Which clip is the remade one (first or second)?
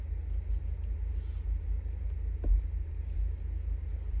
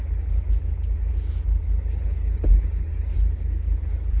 second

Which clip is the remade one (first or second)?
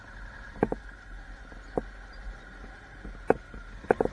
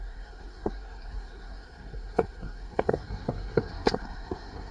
second